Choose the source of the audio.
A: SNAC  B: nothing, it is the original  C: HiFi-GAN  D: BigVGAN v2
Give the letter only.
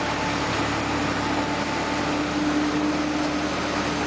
B